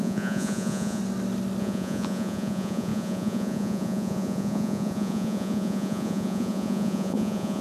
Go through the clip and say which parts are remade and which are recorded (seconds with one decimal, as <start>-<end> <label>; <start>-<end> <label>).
0.0-1.0 remade; 1.0-1.6 recorded; 1.6-7.6 remade

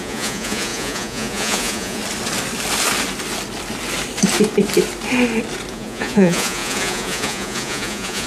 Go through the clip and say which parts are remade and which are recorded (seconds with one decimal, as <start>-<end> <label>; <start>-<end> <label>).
0.0-2.0 remade; 2.0-5.7 recorded; 5.7-8.3 remade

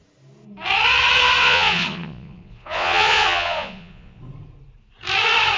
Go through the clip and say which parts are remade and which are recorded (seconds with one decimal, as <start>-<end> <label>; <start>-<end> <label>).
0.0-1.4 recorded; 1.4-4.2 remade; 4.2-5.6 recorded

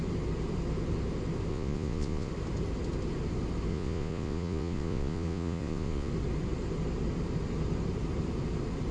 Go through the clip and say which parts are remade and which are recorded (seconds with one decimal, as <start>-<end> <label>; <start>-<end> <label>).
0.0-1.5 recorded; 1.5-2.3 remade; 2.3-3.7 recorded; 3.7-6.1 remade; 6.1-8.9 recorded